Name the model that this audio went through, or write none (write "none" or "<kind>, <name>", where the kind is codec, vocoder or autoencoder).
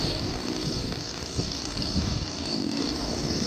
codec, DAC